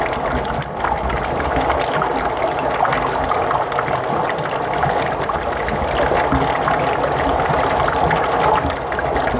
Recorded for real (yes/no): yes